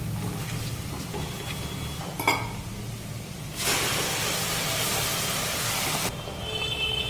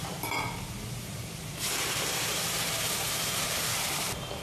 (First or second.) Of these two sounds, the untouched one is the first